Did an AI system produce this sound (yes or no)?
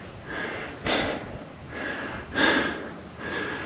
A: no